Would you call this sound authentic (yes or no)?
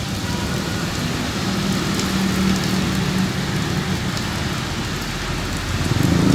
yes